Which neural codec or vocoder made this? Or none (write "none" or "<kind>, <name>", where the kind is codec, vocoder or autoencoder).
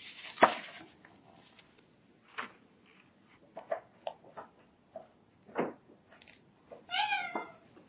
none